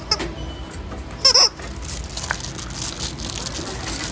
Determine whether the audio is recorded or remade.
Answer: recorded